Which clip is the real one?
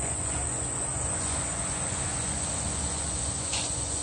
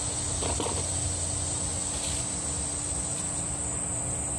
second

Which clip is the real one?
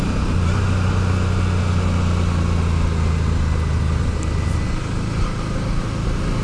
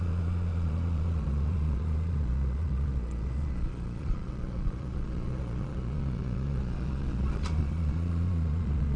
first